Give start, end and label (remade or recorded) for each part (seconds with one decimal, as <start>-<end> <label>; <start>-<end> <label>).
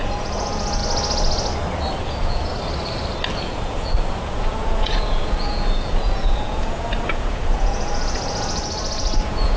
0.0-0.8 remade; 0.8-2.0 recorded; 2.0-2.5 remade; 2.5-3.4 recorded; 3.4-8.6 remade; 8.6-9.2 recorded; 9.2-9.6 remade